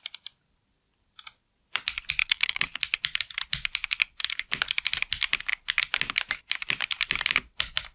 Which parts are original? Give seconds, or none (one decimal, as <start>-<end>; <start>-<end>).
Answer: 0.0-2.2; 2.8-7.9